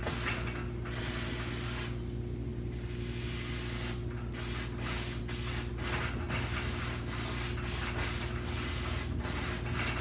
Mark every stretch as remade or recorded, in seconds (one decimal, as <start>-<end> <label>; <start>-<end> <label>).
0.0-10.0 recorded